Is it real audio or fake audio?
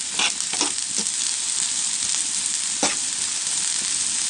real